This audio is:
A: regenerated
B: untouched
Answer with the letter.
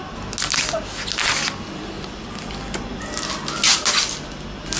B